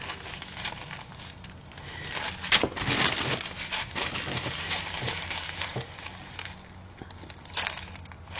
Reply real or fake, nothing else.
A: real